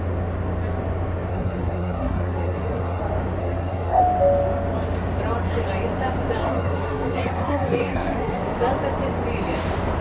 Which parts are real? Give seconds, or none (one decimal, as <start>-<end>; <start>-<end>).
0.0-1.3; 3.0-3.4; 4.0-6.4; 8.4-10.0